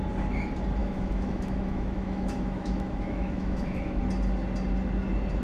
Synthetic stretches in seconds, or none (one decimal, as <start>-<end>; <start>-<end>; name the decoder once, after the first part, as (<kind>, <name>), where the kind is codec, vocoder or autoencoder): 0.8-4.0 (autoencoder, DAC-VAE)